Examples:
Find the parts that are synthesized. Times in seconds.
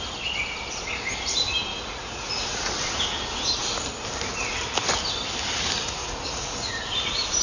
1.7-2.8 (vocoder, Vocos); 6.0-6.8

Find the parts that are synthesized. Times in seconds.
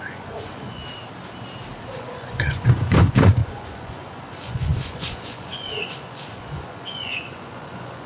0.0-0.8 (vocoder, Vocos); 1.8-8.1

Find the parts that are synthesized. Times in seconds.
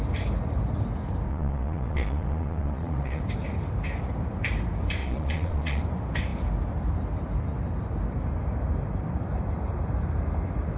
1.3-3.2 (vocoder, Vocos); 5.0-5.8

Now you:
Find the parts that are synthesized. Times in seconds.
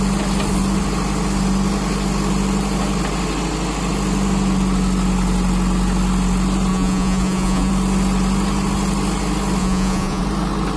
6.7-7.7 (vocoder, Vocos); 9.6-10.2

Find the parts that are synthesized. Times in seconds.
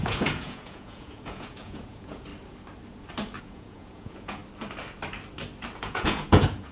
0.0-2.3 (vocoder, Vocos); 3.4-4.4; 5.8-6.7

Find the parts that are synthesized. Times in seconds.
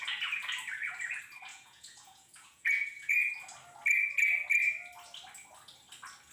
1.5-3.3 (vocoder, Vocos)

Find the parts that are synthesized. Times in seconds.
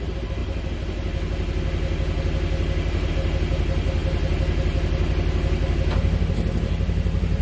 none